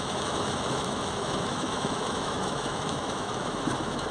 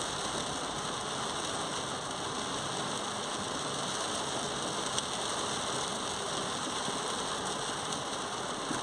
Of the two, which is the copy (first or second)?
first